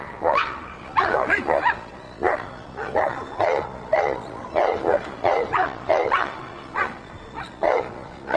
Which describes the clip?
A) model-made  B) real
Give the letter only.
A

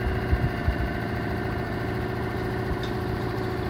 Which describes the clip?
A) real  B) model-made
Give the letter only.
A